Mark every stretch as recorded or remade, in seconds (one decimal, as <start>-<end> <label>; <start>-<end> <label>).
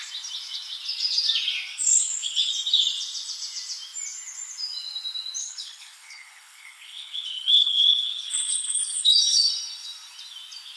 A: 0.0-1.7 recorded; 1.7-2.5 remade; 2.5-5.4 recorded; 5.4-9.5 remade; 9.5-10.8 recorded